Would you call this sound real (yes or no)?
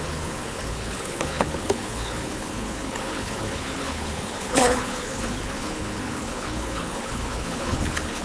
no